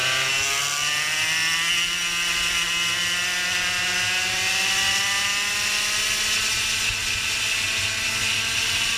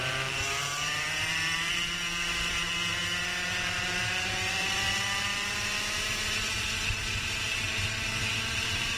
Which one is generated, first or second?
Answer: second